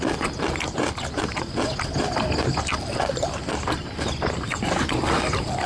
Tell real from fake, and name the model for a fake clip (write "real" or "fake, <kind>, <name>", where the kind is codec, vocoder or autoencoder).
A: real